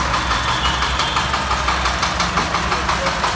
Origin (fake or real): real